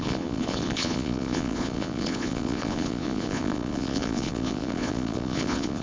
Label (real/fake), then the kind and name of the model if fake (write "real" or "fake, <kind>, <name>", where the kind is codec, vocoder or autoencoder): fake, vocoder, Vocos